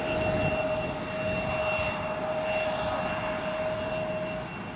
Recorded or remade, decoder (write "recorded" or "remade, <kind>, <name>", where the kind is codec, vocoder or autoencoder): recorded